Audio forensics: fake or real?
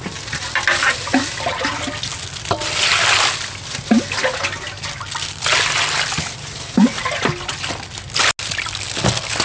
real